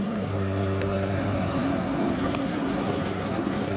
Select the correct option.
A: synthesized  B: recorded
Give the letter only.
A